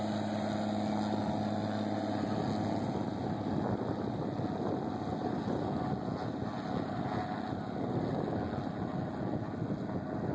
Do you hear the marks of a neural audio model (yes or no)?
no